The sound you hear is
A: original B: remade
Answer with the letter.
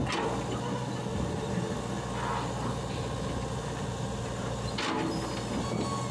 A